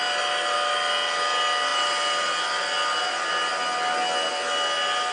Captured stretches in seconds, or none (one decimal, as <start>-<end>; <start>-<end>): 0.0-5.1